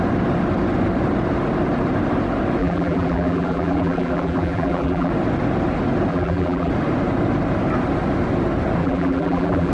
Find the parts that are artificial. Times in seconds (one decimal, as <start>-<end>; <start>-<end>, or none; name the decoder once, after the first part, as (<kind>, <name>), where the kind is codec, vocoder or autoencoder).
2.6-5.1 (vocoder, BigVGAN v2); 6.1-6.7; 8.8-9.7